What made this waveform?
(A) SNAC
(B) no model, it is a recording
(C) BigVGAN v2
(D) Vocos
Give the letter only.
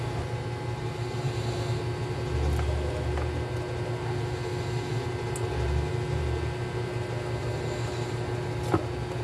B